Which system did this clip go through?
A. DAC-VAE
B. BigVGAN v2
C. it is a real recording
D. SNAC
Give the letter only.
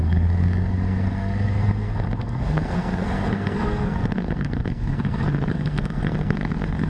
D